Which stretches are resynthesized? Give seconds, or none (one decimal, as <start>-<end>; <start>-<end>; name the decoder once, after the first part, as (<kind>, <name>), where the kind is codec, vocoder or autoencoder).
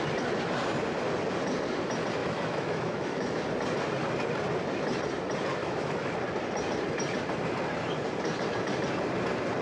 2.2-3.4 (autoencoder, DAC-VAE); 5.6-6.1